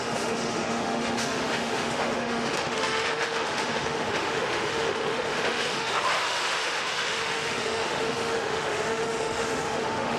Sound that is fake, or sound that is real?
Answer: fake